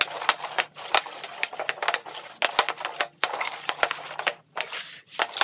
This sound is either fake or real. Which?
real